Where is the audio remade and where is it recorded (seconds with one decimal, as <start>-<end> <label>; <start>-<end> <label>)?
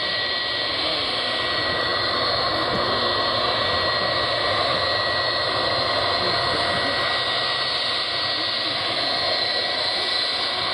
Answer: 0.0-10.7 recorded